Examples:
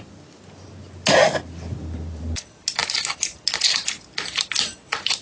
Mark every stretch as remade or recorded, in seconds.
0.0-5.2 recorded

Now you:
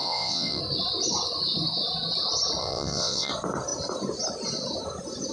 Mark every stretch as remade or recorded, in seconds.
0.0-0.6 remade; 0.6-2.6 recorded; 2.6-3.3 remade; 3.3-5.3 recorded

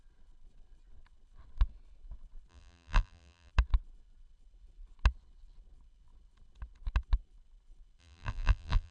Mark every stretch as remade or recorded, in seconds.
0.0-2.5 recorded; 2.5-3.5 remade; 3.5-8.0 recorded; 8.0-8.9 remade

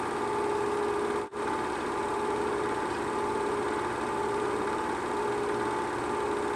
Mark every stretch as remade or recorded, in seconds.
0.0-1.3 recorded; 1.3-5.3 remade; 5.3-6.6 recorded

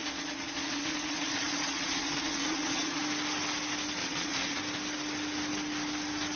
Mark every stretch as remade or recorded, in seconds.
0.0-3.0 remade; 3.0-4.0 recorded; 4.0-4.6 remade; 4.6-6.4 recorded

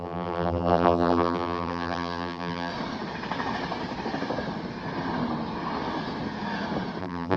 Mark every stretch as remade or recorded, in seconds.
0.0-2.7 remade; 2.7-7.0 recorded; 7.0-7.4 remade